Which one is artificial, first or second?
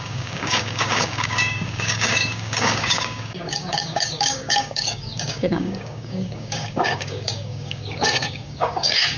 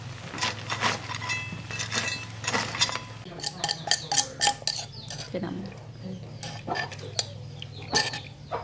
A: first